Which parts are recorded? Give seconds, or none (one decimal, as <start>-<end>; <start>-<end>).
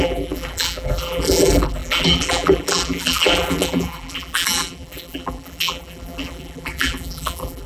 none